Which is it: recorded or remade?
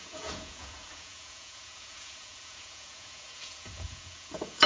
remade